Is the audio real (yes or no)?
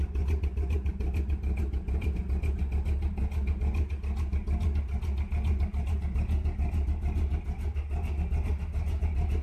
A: yes